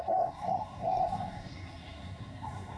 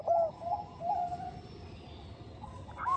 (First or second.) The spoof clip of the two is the first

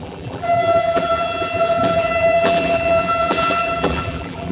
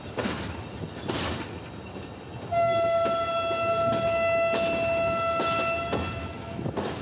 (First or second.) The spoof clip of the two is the first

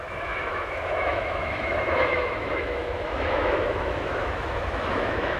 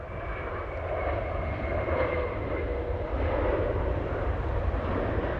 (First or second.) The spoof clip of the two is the first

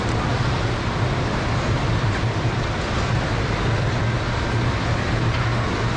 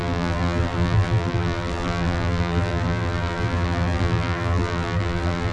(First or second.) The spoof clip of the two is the second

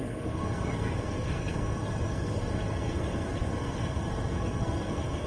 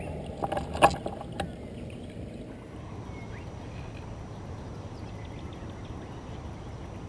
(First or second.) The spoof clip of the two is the first